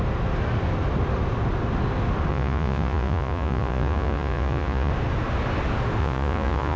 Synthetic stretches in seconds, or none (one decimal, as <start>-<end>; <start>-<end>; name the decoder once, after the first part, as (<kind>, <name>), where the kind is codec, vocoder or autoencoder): 2.3-4.9 (vocoder, Vocos); 6.0-6.8

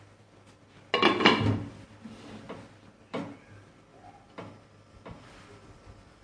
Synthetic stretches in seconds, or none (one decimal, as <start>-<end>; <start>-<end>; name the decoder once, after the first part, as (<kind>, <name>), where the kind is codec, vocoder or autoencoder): none

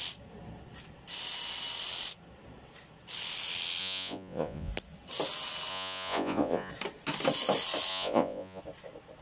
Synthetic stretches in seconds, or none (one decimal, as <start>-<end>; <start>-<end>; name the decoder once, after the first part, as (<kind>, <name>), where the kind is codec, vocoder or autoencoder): 3.8-4.7 (vocoder, Vocos); 5.7-6.7; 7.9-8.6

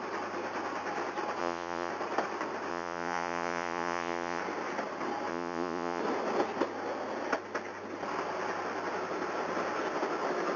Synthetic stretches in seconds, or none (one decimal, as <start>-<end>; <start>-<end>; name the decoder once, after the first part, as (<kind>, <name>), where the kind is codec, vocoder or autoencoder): 1.4-1.9 (vocoder, Vocos); 2.7-4.4; 5.3-6.0